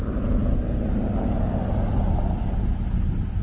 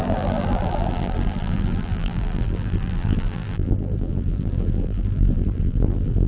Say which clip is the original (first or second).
first